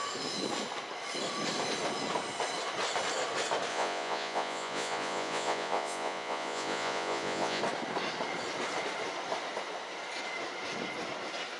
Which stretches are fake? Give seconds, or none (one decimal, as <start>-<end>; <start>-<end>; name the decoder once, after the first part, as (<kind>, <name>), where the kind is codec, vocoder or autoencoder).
3.7-7.6 (vocoder, Vocos)